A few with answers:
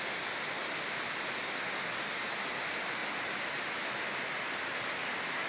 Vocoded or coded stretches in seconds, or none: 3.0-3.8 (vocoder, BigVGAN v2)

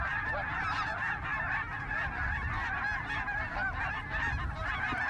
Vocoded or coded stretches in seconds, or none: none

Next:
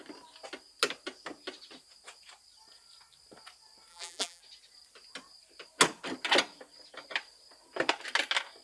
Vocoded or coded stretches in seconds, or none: 3.9-4.4 (vocoder, BigVGAN v2)

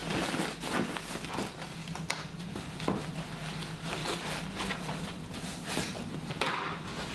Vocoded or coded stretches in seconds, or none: 1.8-3.1 (vocoder, BigVGAN v2); 4.0-7.1

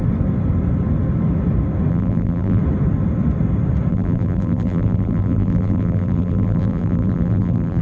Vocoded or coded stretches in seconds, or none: 1.9-2.6 (vocoder, BigVGAN v2); 3.9-7.8